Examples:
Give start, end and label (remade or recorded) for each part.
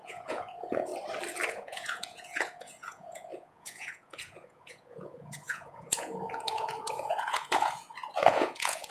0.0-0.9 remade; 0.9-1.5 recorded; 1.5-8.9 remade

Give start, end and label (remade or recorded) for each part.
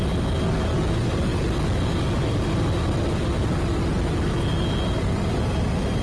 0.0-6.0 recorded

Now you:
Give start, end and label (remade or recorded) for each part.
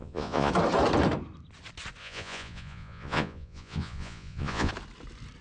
0.0-0.5 remade; 0.5-2.0 recorded; 2.0-4.7 remade; 4.7-5.4 recorded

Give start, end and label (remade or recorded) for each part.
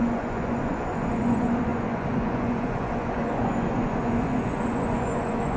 0.0-5.6 remade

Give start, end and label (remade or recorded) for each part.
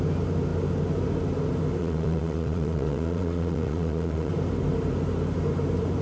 0.0-1.8 recorded; 1.8-4.3 remade; 4.3-6.0 recorded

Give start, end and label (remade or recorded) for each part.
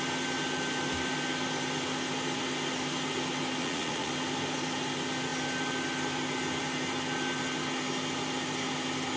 0.0-3.6 recorded; 3.6-4.1 remade; 4.1-9.2 recorded